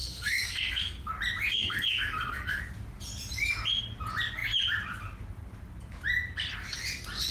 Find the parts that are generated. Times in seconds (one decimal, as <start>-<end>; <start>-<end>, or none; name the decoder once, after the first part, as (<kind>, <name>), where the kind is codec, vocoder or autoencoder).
0.0-1.1 (codec, SNAC); 1.5-2.6